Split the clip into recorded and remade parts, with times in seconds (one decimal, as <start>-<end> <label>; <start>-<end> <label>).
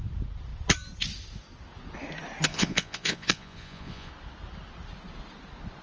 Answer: 0.0-2.5 recorded; 2.5-4.1 remade; 4.1-5.8 recorded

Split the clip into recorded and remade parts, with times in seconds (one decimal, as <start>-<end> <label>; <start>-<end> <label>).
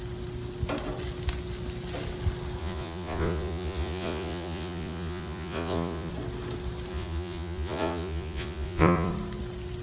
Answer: 0.0-2.6 recorded; 2.6-6.1 remade; 6.1-6.9 recorded; 6.9-9.1 remade; 9.1-9.8 recorded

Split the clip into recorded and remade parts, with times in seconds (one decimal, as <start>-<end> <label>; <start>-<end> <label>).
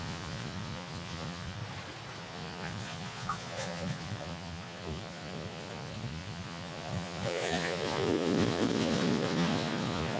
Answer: 0.0-1.6 remade; 1.6-2.2 recorded; 2.2-10.2 remade